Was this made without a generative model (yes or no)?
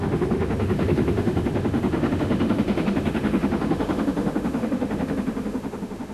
no